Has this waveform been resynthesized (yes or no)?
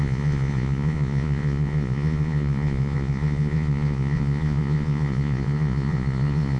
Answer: yes